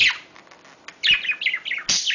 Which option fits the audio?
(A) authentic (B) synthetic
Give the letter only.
A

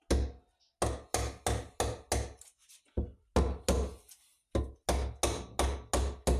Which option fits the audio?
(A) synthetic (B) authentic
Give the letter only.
B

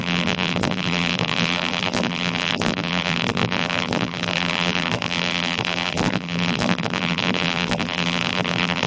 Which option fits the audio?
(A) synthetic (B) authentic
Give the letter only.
A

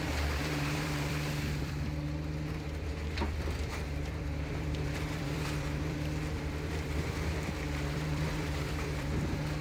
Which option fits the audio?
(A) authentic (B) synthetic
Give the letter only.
B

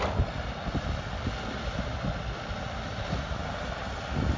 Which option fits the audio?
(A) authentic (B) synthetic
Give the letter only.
A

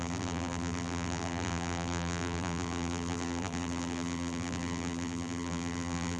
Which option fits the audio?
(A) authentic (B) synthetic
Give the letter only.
B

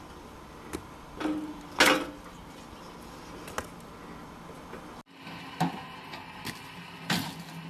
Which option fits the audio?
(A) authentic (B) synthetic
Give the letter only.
A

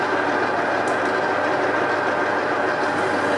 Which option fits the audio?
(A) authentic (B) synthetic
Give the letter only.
A